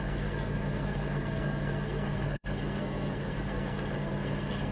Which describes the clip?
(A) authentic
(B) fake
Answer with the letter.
B